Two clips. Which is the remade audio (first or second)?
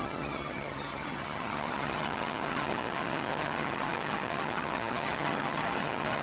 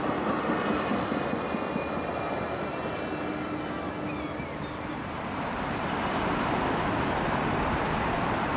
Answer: first